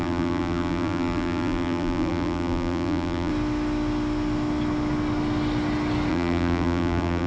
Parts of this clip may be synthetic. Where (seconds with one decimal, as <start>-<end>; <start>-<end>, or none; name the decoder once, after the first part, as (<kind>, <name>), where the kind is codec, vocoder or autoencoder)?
0.0-3.3 (vocoder, BigVGAN v2); 6.1-7.3